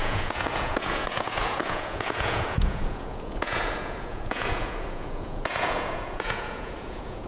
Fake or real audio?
fake